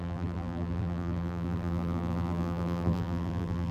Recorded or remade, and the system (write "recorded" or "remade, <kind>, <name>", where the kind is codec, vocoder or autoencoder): remade, vocoder, BigVGAN v2